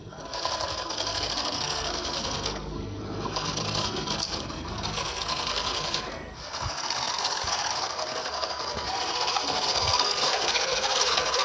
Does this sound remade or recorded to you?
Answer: remade